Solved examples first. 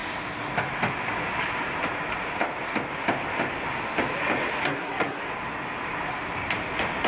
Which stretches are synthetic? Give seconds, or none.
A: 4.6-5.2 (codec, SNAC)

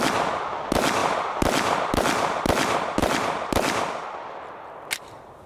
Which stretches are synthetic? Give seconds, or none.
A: none

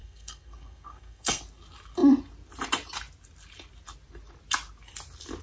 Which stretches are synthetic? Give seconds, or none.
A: 0.0-1.4 (codec, SNAC)

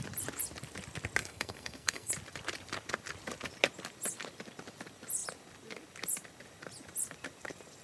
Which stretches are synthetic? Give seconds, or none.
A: 1.2-2.1 (codec, SNAC)

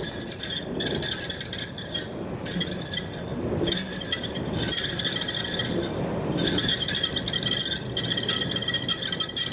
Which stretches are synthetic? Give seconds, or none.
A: none

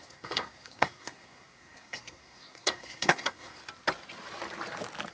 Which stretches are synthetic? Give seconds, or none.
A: 0.0-3.6 (codec, SNAC)